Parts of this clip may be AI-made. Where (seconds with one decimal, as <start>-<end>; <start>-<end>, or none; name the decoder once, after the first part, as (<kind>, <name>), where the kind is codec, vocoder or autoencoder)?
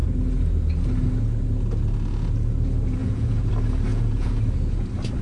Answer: 3.0-3.5 (vocoder, Vocos); 3.9-4.4